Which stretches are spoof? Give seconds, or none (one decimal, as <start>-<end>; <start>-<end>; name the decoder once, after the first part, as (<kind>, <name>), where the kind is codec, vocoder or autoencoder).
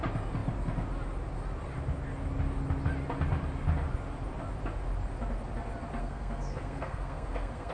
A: 6.0-7.7 (codec, SNAC)